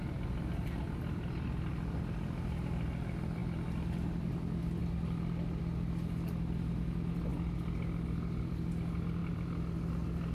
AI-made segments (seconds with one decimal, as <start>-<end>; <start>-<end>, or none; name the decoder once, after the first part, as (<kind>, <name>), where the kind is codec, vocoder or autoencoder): none